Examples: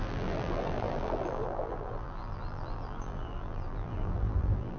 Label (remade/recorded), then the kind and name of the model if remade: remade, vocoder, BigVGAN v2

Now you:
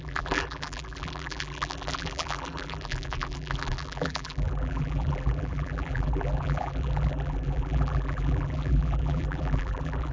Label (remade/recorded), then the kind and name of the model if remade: remade, vocoder, BigVGAN v2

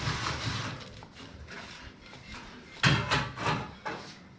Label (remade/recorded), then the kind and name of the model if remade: recorded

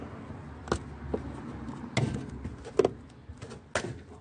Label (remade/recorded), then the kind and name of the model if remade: recorded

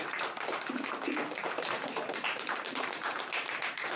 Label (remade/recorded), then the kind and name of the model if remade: remade, vocoder, BigVGAN v2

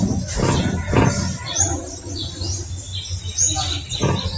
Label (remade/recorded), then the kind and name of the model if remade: recorded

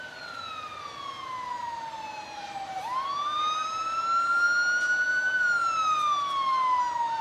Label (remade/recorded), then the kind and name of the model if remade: recorded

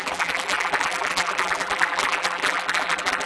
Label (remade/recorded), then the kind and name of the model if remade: remade, vocoder, BigVGAN v2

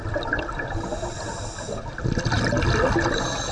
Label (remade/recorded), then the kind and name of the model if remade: recorded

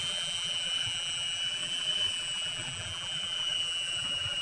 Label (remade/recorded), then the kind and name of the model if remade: remade, vocoder, BigVGAN v2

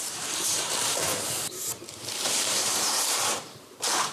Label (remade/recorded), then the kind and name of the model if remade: remade, vocoder, BigVGAN v2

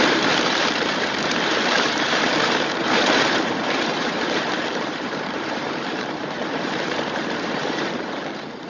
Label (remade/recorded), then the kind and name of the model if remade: remade, vocoder, BigVGAN v2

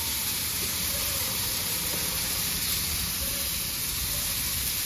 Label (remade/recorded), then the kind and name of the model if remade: remade, vocoder, BigVGAN v2